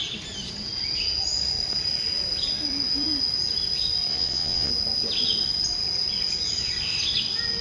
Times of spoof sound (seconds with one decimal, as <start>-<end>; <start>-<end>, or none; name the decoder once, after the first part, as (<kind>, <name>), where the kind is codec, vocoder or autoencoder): 4.1-4.7 (vocoder, WaveNeXt)